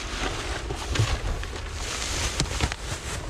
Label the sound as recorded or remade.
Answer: recorded